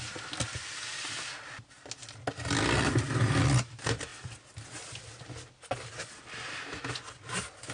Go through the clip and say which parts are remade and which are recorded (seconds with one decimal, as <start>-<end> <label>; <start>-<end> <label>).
0.0-7.7 recorded